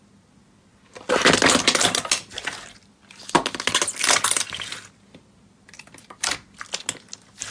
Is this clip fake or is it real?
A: real